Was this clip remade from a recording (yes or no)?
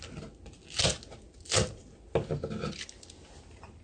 no